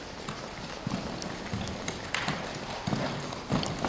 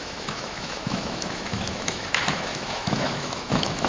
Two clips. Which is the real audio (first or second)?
first